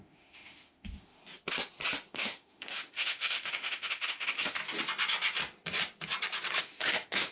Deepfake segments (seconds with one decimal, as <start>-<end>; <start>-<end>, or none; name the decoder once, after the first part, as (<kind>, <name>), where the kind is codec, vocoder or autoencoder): 0.0-1.2 (autoencoder, DAC-VAE); 2.1-4.6; 6.6-7.3

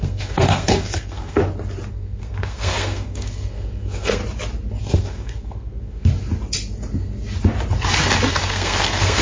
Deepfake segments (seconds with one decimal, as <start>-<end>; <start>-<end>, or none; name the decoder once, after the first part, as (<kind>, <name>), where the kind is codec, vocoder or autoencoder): 0.0-1.4 (codec, SNAC); 1.9-4.2; 4.8-6.1; 8.3-9.2